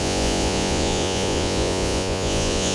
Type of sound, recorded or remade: remade